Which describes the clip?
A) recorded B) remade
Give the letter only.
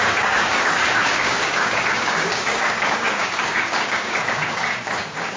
B